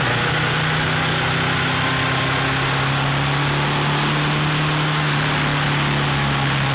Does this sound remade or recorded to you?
recorded